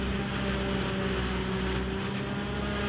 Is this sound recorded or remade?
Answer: recorded